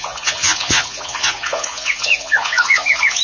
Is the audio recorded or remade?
remade